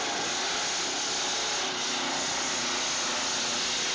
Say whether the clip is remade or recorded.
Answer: recorded